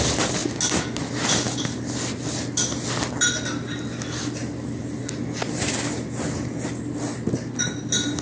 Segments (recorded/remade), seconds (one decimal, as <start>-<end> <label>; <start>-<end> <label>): 0.0-8.2 recorded